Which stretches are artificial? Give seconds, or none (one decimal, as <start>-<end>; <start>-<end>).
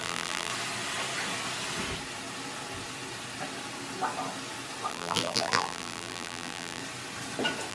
0.0-0.5; 4.9-6.8